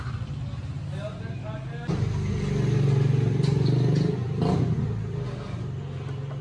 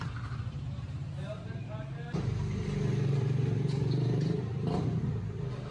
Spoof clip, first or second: second